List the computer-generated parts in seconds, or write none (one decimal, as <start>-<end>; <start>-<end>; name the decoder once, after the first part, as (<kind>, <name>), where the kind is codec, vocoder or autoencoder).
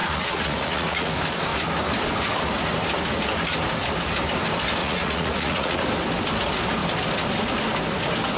0.0-1.1 (vocoder, Vocos); 4.8-5.8